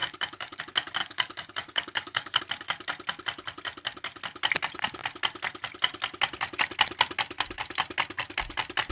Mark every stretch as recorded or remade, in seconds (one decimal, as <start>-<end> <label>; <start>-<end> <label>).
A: 0.0-0.6 remade; 0.6-1.0 recorded; 1.0-2.4 remade; 2.4-8.9 recorded